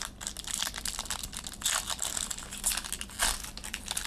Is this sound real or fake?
real